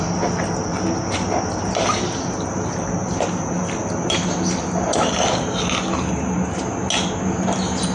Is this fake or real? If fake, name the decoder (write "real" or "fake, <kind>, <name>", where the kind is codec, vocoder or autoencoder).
real